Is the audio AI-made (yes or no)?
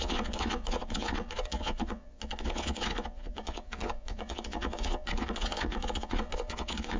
yes